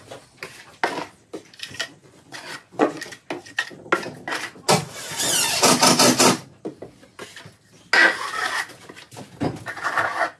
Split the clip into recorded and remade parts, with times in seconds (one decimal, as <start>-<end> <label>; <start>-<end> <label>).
0.0-2.0 recorded; 2.0-3.0 remade; 3.0-10.4 recorded